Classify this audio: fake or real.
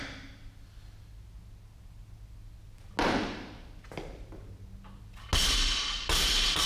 real